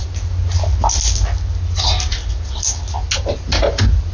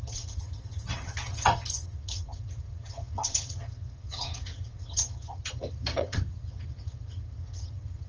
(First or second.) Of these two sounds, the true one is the first